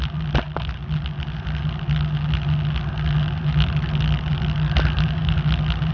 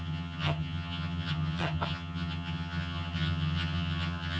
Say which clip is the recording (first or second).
first